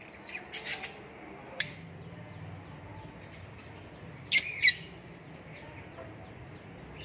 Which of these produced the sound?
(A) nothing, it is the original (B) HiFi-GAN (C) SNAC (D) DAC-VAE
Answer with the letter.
A